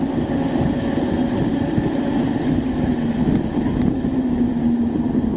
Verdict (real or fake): real